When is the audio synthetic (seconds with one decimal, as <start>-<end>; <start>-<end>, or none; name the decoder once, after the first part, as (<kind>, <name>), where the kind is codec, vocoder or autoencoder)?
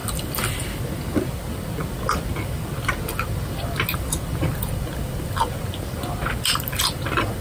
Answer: 0.0-0.5 (vocoder, BigVGAN v2)